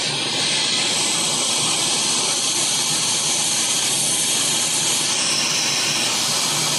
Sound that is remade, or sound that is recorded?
recorded